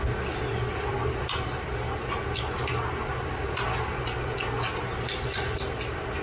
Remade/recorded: recorded